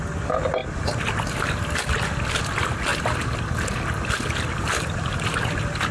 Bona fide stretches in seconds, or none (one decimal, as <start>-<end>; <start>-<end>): 0.0-5.9